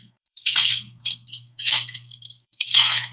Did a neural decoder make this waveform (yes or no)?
yes